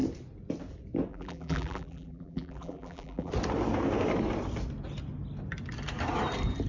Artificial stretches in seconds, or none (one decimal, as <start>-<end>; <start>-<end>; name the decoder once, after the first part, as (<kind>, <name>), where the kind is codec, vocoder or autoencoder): 1.1-3.3 (vocoder, BigVGAN v2)